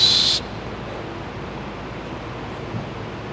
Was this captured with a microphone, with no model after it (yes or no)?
yes